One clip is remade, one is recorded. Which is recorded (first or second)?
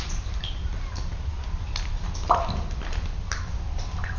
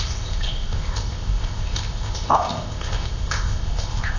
first